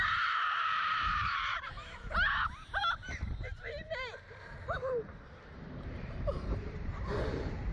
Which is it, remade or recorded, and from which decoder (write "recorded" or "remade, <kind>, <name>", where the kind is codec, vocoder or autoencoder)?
remade, vocoder, BigVGAN v2